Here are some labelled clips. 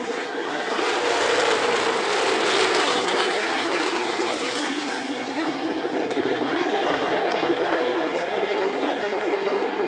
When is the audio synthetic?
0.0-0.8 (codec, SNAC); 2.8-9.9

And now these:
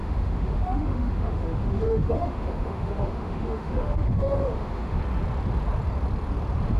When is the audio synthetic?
0.0-5.0 (autoencoder, DAC-VAE)

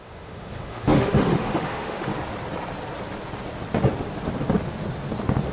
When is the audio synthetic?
0.0-2.1 (autoencoder, DAC-VAE)